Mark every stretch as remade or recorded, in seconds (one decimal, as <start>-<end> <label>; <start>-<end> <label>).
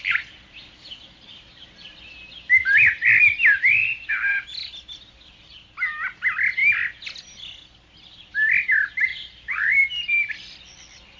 0.0-9.1 recorded; 9.1-10.3 remade; 10.3-11.2 recorded